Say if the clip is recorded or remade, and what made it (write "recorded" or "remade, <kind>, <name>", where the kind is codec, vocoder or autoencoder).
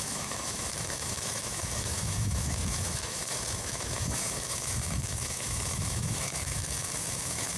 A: remade, autoencoder, DAC-VAE